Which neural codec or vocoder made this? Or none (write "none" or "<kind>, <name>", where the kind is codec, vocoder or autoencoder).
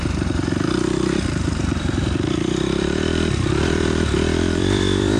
vocoder, BigVGAN v2